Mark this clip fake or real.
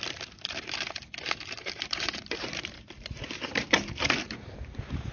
fake